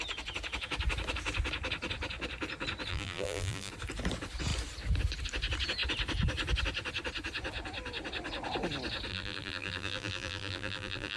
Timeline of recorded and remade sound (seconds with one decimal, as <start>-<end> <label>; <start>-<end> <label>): 0.0-2.9 recorded; 2.9-3.7 remade; 3.7-9.1 recorded; 9.1-11.2 remade